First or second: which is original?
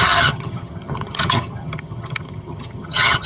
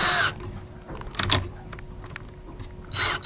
second